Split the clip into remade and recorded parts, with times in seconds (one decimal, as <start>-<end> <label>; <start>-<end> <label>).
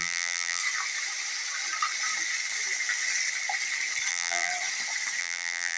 0.0-0.6 remade; 0.6-4.1 recorded; 4.1-4.5 remade; 4.5-5.2 recorded; 5.2-5.8 remade